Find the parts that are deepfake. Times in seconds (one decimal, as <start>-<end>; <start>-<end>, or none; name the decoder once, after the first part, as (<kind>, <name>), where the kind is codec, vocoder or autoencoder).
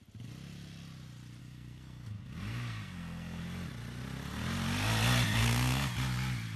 1.4-3.4 (codec, SNAC); 5.4-5.9